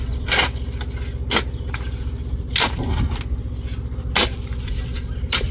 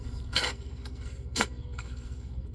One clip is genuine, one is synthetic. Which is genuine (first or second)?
first